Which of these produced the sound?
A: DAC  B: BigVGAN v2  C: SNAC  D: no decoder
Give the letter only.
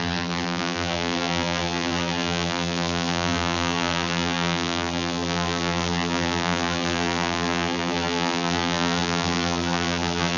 B